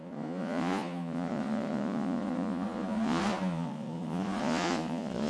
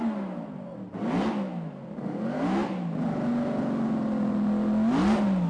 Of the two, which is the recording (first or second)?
second